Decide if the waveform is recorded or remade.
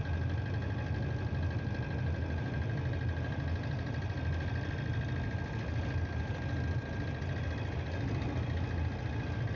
recorded